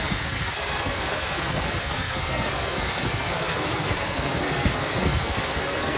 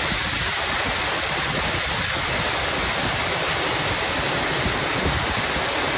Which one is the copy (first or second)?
first